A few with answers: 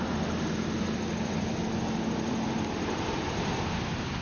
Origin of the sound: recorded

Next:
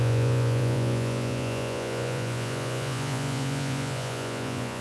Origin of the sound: remade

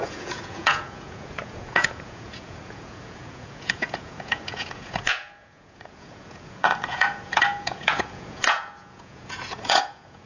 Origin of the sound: remade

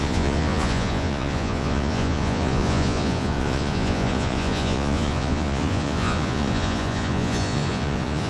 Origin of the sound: remade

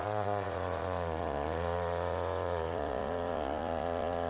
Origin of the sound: remade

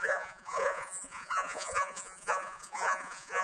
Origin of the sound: remade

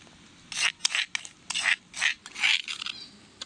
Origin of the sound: recorded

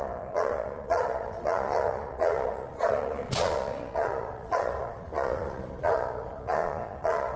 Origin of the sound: remade